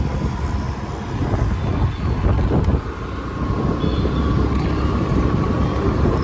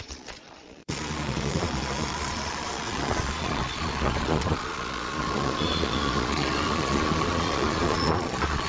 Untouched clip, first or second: first